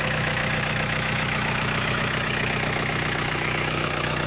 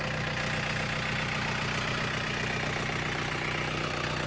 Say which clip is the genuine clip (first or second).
second